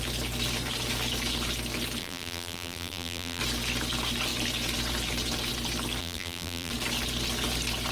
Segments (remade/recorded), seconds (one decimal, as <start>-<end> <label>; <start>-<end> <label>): 0.0-2.0 recorded; 2.0-3.4 remade; 3.4-6.0 recorded; 6.0-6.7 remade; 6.7-7.9 recorded